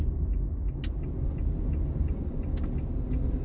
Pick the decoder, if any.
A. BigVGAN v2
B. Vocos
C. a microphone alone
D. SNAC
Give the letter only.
C